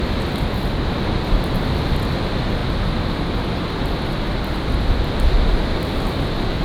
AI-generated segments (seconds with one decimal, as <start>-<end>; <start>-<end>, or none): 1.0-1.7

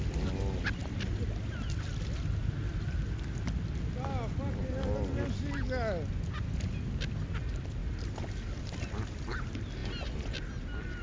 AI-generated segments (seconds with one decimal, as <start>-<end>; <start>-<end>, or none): none

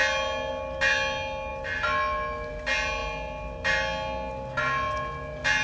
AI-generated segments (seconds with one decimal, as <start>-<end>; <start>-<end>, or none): none

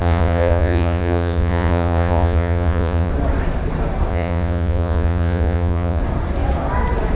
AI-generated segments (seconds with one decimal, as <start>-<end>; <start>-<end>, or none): 0.0-3.1; 4.1-6.0